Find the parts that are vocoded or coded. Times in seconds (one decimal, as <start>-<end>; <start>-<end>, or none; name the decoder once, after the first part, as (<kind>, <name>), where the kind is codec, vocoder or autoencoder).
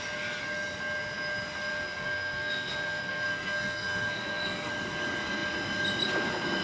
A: 1.7-4.7 (codec, SNAC)